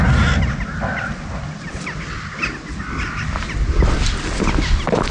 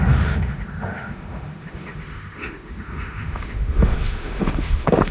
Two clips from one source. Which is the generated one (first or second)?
second